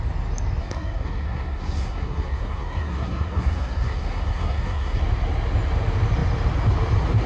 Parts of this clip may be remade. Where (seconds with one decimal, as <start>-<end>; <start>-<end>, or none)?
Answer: 0.6-5.0